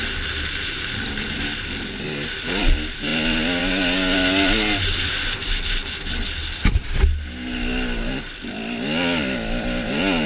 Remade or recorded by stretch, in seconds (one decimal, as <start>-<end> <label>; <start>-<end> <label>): 0.0-10.3 recorded